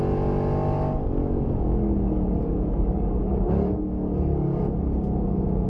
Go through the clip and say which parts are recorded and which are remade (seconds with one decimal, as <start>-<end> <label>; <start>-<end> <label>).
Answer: 0.0-1.2 recorded; 1.2-4.6 remade; 4.6-5.7 recorded